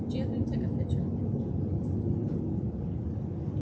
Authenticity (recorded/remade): recorded